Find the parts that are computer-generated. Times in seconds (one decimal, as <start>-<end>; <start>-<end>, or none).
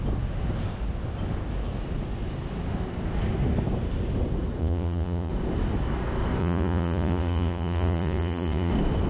4.6-5.3; 6.4-8.7